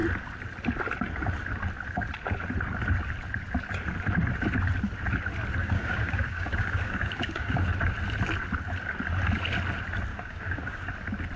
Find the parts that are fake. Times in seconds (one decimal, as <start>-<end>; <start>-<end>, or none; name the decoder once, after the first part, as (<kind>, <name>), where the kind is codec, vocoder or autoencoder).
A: 5.6-7.7 (codec, DAC); 10.1-10.9